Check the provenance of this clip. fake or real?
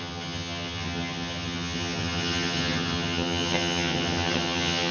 fake